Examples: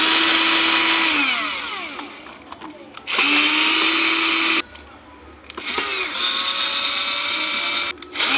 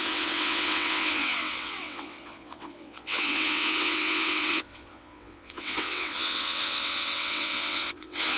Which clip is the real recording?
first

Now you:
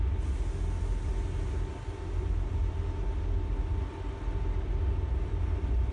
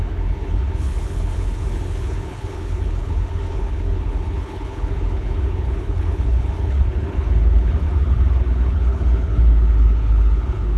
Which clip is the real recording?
first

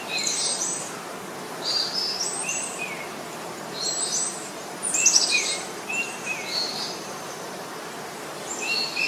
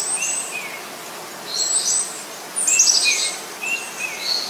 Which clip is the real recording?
second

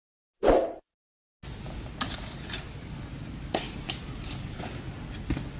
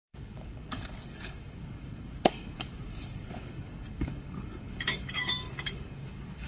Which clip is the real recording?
first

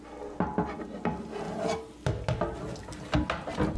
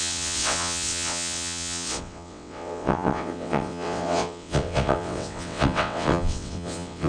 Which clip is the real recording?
first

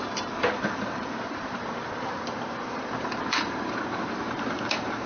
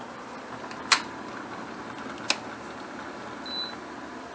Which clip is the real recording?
second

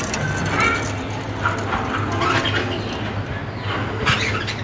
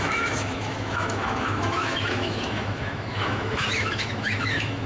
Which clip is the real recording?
first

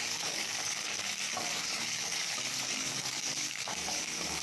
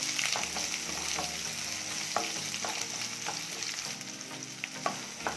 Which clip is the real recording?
second